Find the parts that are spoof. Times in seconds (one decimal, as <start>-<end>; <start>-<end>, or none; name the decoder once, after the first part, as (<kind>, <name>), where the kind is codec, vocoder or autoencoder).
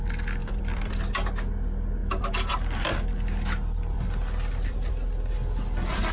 0.4-1.3 (vocoder, BigVGAN v2); 2.0-6.1